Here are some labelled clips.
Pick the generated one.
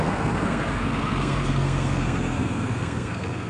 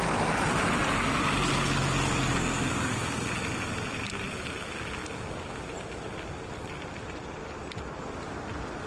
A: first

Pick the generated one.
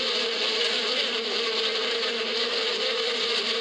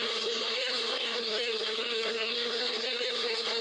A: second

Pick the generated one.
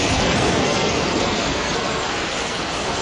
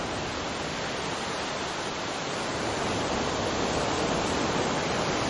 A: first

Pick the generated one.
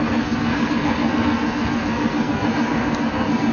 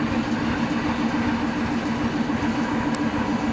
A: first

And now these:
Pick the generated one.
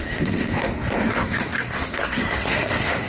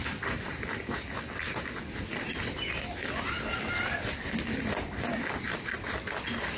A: first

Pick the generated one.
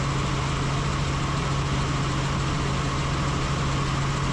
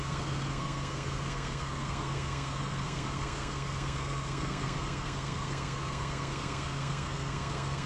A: second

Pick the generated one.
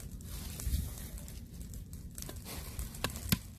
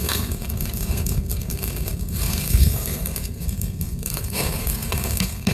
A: second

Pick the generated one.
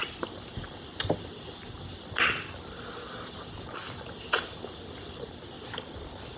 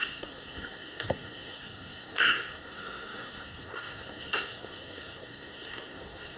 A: second